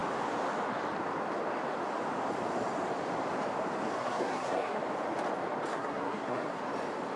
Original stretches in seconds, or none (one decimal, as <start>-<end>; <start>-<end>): 0.0-4.0; 4.8-5.7; 6.6-7.2